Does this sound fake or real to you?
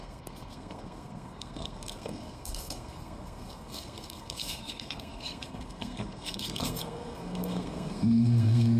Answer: fake